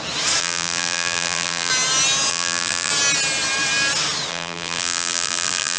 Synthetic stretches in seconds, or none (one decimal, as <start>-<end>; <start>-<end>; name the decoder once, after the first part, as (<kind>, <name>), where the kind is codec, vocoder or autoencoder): 0.4-1.7 (vocoder, BigVGAN v2); 2.3-2.9; 4.3-5.8